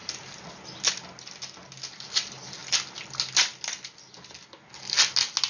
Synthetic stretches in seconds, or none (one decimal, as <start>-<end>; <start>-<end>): none